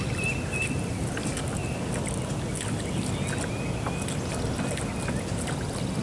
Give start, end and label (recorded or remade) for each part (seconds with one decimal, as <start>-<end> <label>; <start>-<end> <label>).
0.0-6.0 recorded